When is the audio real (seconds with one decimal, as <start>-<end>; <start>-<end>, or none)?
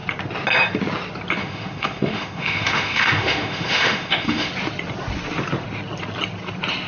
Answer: 0.0-1.4; 4.5-6.9